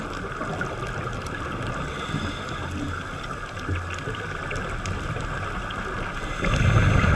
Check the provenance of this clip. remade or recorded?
recorded